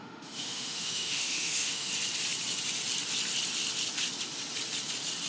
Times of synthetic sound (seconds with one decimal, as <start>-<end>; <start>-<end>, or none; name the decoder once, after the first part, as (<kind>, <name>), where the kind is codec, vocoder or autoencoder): 0.0-1.9 (autoencoder, DAC-VAE)